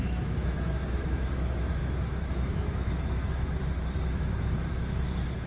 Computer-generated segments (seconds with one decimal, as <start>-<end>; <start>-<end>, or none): 0.0-5.5